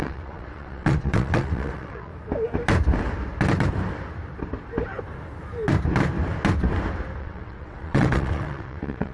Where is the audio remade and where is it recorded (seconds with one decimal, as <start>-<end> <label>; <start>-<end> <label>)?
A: 0.0-2.1 remade; 2.1-7.2 recorded; 7.2-9.1 remade